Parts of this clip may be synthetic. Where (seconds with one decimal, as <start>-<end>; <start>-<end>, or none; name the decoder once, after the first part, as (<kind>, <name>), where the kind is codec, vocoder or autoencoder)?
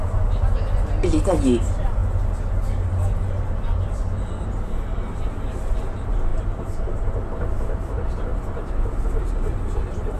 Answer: 6.3-7.2 (vocoder, BigVGAN v2); 8.3-10.2